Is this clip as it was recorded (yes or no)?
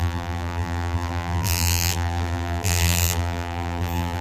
no